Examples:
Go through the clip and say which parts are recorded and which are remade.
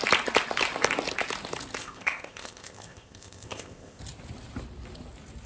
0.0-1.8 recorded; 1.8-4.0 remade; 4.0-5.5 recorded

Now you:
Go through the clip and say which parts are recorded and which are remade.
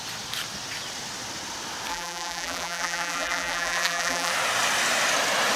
0.0-1.9 recorded; 1.9-4.3 remade; 4.3-5.6 recorded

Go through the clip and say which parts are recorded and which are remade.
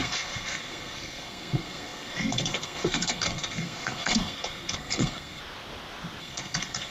0.0-5.4 remade; 5.4-6.2 recorded; 6.2-6.9 remade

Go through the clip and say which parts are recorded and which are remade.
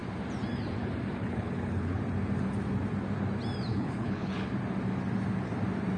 0.0-1.2 recorded; 1.2-2.0 remade; 2.0-3.7 recorded; 3.7-4.5 remade; 4.5-6.0 recorded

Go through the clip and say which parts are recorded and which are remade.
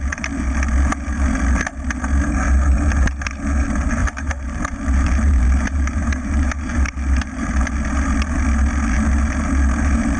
0.0-4.0 recorded; 4.0-7.7 remade; 7.7-10.2 recorded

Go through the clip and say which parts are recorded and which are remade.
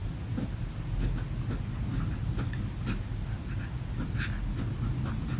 0.0-5.4 recorded